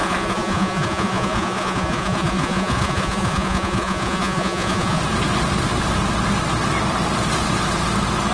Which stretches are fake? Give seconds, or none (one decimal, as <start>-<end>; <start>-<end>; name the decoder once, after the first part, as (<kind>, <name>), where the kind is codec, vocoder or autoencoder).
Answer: 0.0-5.0 (vocoder, Vocos)